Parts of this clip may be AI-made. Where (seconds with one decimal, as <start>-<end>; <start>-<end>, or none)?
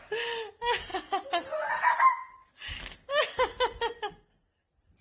none